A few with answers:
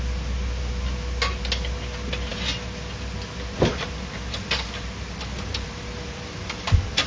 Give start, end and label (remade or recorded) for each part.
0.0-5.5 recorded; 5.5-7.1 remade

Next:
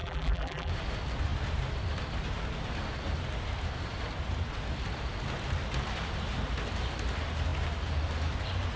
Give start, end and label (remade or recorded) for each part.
0.0-0.7 remade; 0.7-8.8 recorded

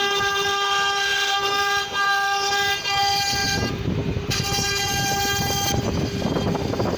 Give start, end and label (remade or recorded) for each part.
0.0-1.1 recorded; 1.1-3.0 remade; 3.0-3.4 recorded; 3.4-5.2 remade; 5.2-7.0 recorded